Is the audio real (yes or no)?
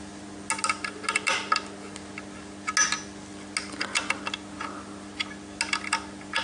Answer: yes